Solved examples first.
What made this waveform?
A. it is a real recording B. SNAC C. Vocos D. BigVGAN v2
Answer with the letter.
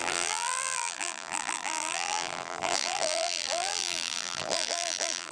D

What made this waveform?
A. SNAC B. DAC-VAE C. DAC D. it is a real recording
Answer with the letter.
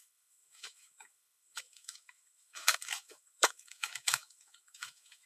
B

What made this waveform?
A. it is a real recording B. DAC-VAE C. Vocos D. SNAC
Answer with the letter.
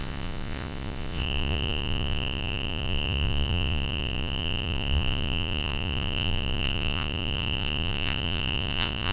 C